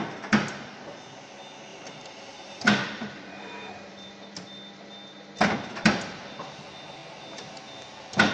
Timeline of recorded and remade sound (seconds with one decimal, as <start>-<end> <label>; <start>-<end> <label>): 0.0-1.7 recorded; 1.7-4.9 remade; 4.9-8.3 recorded